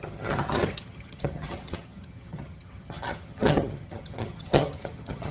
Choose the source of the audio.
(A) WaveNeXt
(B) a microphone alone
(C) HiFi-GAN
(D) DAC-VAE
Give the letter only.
C